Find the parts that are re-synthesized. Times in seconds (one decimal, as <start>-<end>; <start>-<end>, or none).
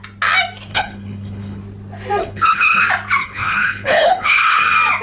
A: 0.7-1.6; 2.2-2.8; 3.2-4.6